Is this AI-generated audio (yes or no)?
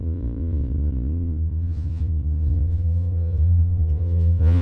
yes